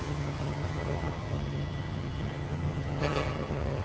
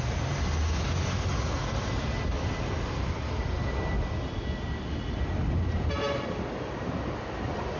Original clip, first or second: second